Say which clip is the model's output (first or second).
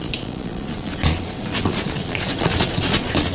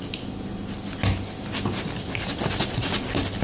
first